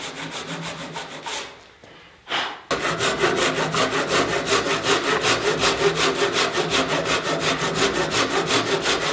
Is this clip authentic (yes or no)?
yes